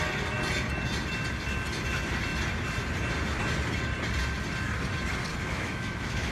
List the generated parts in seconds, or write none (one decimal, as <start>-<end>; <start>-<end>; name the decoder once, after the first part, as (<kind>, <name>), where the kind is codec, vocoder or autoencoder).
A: 5.3-6.3 (autoencoder, DAC-VAE)